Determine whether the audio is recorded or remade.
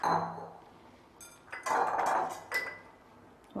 recorded